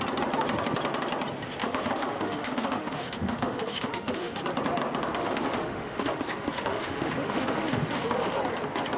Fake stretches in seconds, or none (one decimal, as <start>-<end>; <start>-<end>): 1.6-4.4; 5.2-8.4